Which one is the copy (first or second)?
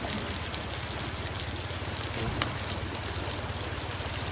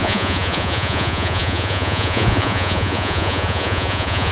second